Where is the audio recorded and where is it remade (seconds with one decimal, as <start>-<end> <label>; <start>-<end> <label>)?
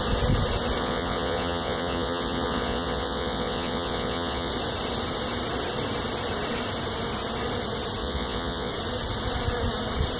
0.0-0.8 recorded; 0.8-4.5 remade; 4.5-8.0 recorded; 8.0-8.7 remade; 8.7-10.2 recorded